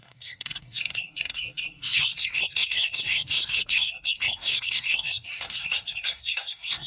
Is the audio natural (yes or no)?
no